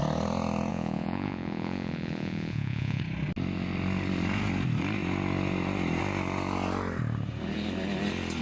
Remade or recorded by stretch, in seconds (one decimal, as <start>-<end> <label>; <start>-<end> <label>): 0.0-0.7 recorded; 0.7-3.0 remade; 3.0-8.4 recorded